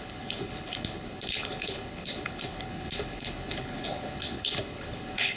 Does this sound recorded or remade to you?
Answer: remade